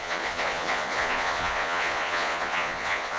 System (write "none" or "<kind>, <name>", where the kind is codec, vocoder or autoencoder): vocoder, Vocos